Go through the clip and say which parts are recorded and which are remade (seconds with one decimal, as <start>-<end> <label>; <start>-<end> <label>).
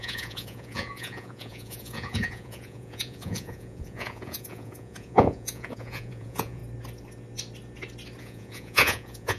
0.0-6.6 remade; 6.6-8.2 recorded; 8.2-9.4 remade